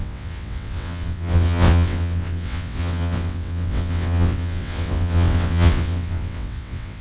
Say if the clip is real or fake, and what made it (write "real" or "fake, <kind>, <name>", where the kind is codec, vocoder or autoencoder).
fake, vocoder, WaveNeXt